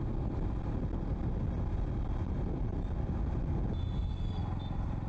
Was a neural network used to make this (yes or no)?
no